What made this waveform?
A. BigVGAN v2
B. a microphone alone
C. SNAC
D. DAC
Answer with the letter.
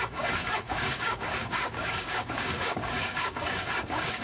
D